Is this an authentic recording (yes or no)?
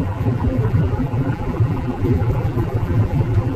no